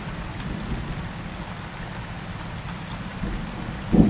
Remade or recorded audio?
recorded